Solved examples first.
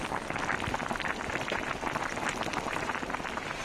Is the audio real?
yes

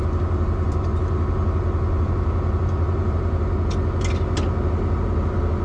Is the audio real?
yes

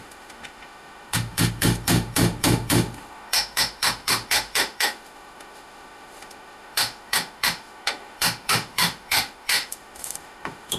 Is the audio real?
no